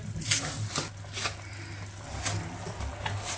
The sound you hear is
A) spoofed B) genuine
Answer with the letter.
B